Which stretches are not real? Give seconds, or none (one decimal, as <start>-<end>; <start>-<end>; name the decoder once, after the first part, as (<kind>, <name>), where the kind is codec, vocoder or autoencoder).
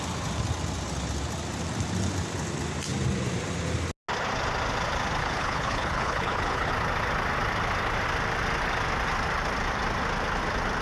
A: 5.2-6.7 (codec, HILCodec)